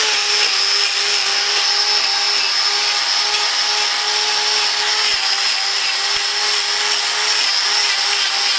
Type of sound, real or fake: real